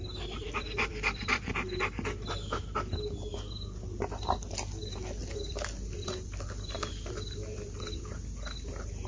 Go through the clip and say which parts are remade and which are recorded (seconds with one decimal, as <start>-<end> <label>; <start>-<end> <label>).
0.0-0.4 recorded; 0.4-1.5 remade; 1.5-5.2 recorded; 5.2-8.0 remade; 8.0-9.1 recorded